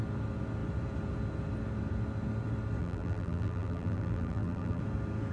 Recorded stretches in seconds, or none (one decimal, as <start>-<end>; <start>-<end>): 0.0-2.8; 4.8-5.3